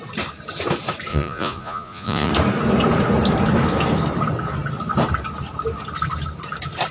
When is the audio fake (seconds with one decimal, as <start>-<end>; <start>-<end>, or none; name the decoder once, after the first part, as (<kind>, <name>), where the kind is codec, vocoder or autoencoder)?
1.1-2.3 (vocoder, Vocos)